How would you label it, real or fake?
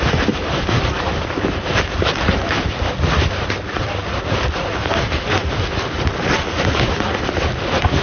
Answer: fake